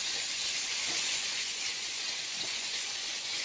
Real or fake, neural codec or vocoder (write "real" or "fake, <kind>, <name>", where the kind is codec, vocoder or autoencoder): fake, vocoder, Vocos